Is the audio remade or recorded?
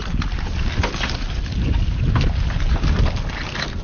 recorded